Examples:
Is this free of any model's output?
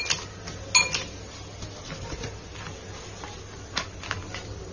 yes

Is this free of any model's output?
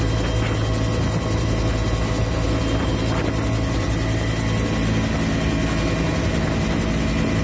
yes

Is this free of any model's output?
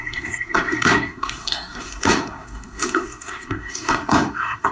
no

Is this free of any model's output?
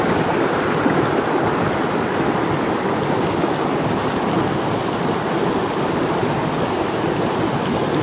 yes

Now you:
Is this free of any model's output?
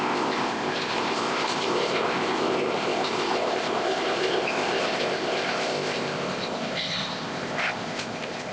no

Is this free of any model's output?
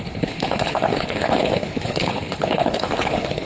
no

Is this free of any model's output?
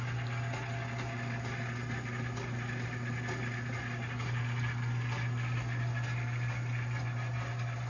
yes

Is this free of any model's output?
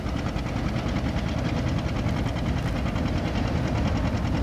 yes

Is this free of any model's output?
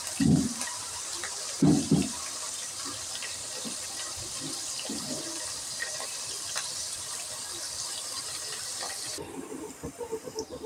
no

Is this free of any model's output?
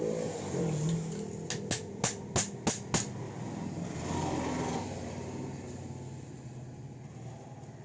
yes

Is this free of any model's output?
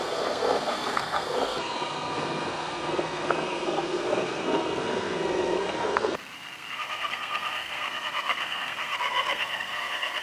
no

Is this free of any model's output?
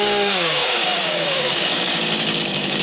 no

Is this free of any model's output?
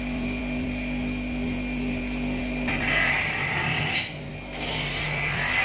yes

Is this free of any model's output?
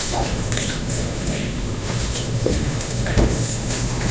no